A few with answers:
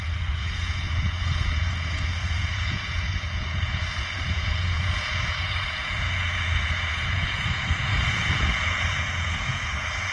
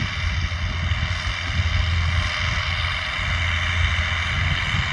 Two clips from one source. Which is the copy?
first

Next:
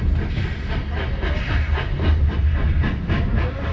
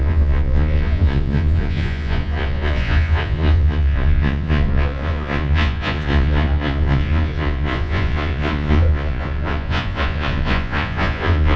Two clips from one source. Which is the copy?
second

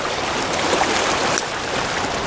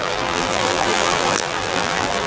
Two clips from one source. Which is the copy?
second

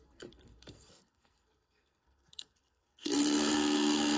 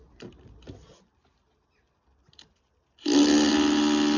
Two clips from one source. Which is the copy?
first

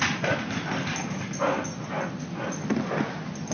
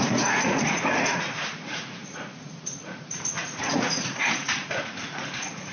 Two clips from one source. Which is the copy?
second